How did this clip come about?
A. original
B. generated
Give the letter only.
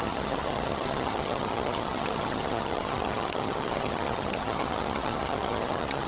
B